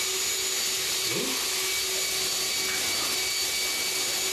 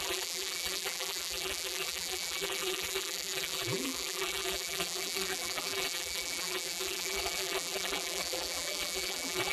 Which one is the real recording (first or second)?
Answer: first